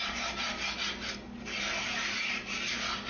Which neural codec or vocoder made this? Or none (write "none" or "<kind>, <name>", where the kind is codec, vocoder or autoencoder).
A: vocoder, BigVGAN v2